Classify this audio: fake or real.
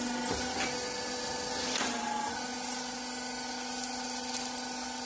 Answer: real